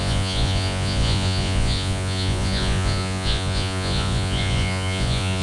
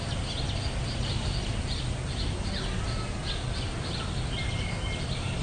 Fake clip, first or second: first